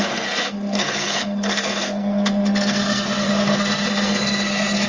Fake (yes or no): yes